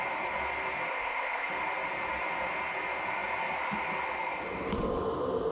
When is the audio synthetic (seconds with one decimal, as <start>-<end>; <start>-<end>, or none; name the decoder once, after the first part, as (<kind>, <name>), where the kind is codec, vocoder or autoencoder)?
0.9-1.5 (codec, ZipCodec)